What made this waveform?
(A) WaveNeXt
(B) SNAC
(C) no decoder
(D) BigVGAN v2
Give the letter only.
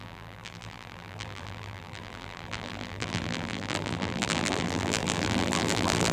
D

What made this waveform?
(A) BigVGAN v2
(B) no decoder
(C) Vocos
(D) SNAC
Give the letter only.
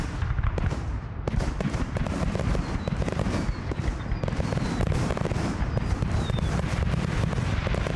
A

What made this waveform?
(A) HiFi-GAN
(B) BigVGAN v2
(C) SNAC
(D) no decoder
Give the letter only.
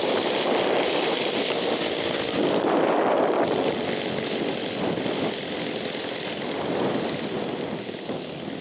D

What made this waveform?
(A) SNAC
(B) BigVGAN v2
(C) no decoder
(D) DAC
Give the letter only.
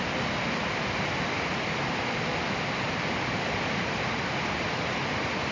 B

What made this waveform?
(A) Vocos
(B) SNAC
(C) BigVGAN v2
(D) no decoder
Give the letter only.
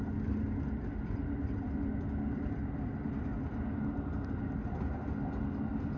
D